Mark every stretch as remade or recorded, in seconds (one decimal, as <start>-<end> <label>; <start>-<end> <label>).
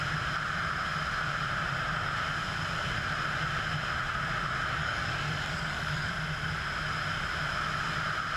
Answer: 0.0-4.8 recorded; 4.8-6.1 remade; 6.1-8.4 recorded